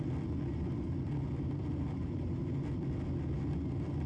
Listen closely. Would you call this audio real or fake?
real